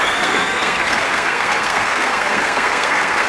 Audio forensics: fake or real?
fake